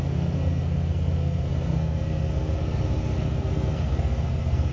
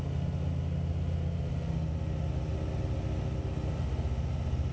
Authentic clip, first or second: second